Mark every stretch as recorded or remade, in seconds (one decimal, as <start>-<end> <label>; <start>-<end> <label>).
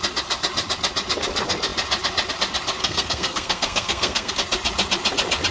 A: 0.0-2.8 recorded; 2.8-4.3 remade; 4.3-5.5 recorded